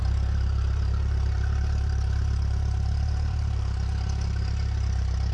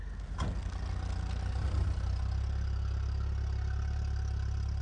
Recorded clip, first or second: second